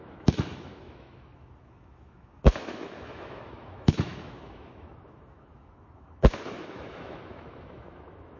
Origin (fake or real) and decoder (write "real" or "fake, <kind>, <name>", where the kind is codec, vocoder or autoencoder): fake, autoencoder, DAC-VAE